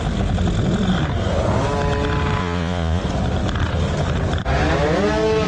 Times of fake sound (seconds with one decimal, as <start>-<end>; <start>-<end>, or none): 2.4-3.0